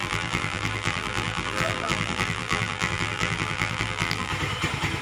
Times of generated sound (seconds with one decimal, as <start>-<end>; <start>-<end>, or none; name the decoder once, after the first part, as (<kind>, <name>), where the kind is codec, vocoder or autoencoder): 0.0-4.3 (vocoder, BigVGAN v2)